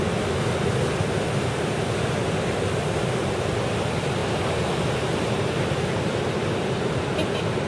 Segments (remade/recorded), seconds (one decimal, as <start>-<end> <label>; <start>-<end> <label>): 0.0-4.2 recorded; 4.2-5.6 remade; 5.6-7.7 recorded